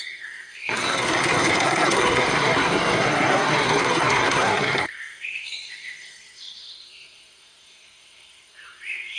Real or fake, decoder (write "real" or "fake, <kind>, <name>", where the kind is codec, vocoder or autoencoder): fake, codec, SNAC